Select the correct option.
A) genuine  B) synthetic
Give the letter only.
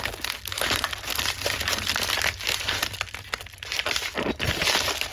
A